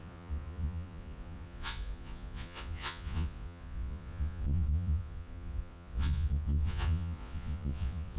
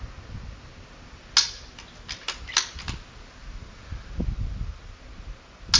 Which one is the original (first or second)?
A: second